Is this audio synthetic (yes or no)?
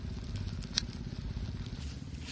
yes